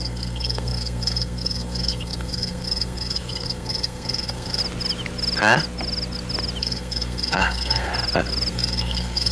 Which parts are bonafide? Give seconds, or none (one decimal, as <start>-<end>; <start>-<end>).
4.6-6.6; 7.9-8.5